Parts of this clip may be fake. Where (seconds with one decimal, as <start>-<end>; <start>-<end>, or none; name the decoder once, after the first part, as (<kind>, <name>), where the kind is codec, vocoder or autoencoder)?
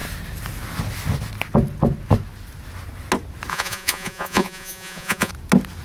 3.5-5.3 (vocoder, Vocos)